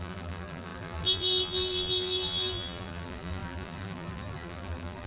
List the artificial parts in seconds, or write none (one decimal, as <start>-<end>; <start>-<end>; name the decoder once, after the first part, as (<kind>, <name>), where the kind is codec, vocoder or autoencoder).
0.0-5.1 (vocoder, BigVGAN v2)